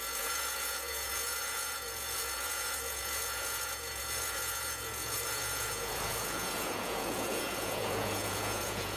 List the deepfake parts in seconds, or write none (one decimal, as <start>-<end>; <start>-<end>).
0.0-9.0